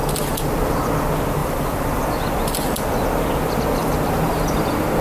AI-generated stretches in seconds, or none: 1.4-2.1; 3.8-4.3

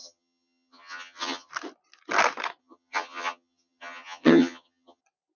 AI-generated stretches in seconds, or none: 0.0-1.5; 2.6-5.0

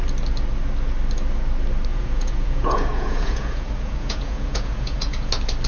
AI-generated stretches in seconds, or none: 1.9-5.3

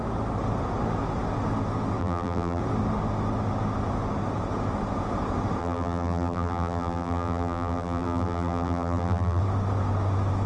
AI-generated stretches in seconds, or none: 2.0-2.6; 5.6-9.4

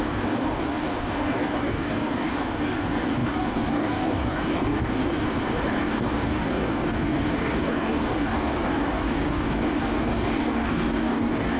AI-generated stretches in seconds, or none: 0.0-5.0; 5.8-11.6

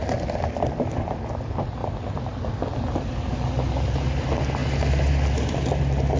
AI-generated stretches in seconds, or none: none

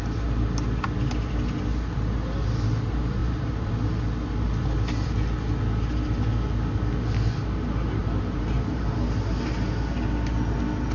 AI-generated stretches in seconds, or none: 3.2-3.7; 8.0-8.8